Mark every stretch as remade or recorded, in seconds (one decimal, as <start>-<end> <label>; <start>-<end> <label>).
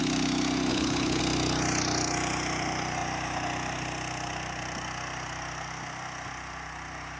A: 0.0-0.7 recorded; 0.7-1.2 remade; 1.2-7.2 recorded